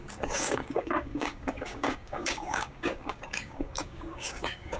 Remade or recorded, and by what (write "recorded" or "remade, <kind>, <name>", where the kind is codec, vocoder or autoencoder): remade, codec, DAC